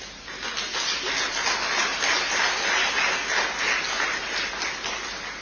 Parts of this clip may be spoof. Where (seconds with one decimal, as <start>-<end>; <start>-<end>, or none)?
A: none